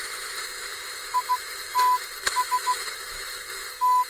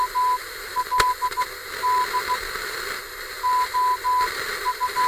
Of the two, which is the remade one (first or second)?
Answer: first